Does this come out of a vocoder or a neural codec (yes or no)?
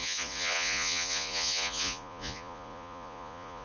yes